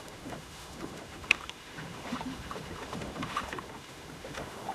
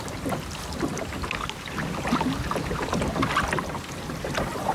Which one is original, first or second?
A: second